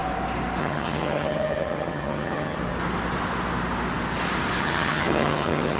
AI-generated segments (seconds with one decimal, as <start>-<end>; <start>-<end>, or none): 0.6-2.6; 4.6-5.8